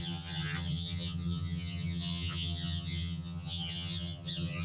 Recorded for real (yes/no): no